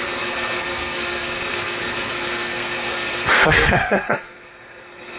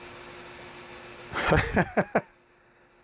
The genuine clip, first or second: second